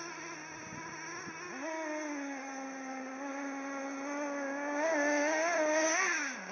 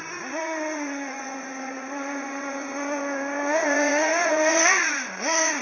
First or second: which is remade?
second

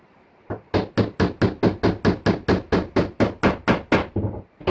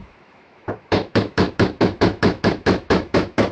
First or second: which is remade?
second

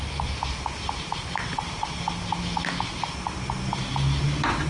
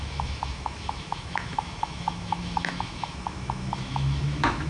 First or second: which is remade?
second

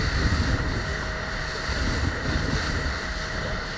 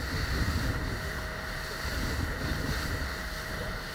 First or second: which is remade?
first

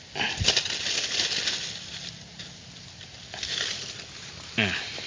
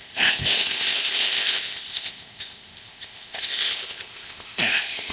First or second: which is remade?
second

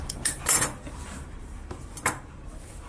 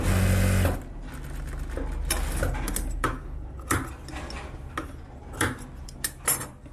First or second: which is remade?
first